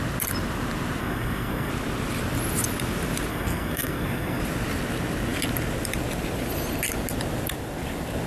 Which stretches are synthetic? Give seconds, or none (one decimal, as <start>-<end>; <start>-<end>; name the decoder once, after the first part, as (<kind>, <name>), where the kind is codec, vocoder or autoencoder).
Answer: 1.0-1.7 (codec, SNAC); 3.3-4.4